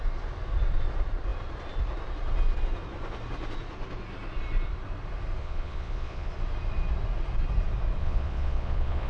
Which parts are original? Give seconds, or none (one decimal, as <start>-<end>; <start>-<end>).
0.0-5.4; 6.3-8.0